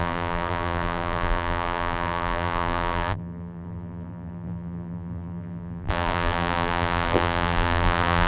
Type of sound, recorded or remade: remade